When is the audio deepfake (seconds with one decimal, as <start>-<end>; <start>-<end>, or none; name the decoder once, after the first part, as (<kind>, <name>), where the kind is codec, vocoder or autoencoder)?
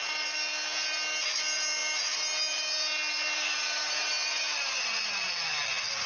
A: none